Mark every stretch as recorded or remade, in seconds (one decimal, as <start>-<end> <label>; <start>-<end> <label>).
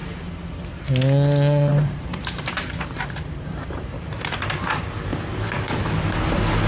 0.0-0.8 remade; 0.8-1.7 recorded; 1.7-4.4 remade; 4.4-6.7 recorded